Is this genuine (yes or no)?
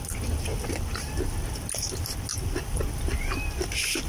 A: yes